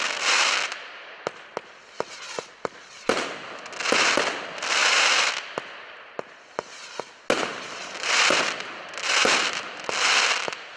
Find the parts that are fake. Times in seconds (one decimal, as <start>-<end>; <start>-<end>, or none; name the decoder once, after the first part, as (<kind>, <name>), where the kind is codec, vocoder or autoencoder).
7.5-9.9 (vocoder, BigVGAN v2)